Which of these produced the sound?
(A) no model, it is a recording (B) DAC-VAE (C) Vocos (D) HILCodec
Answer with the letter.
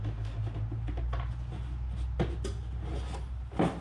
A